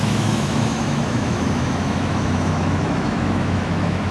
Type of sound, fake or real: fake